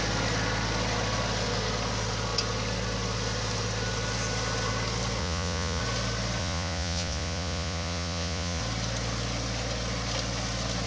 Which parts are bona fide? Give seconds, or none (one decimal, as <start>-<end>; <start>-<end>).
0.0-5.2; 5.8-6.4; 8.6-10.9